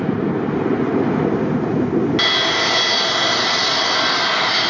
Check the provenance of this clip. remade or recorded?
recorded